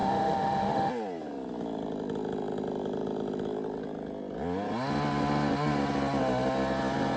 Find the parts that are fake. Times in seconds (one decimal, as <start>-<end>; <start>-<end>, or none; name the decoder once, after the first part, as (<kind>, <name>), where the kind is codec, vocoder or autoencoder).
0.0-0.9 (autoencoder, DAC-VAE)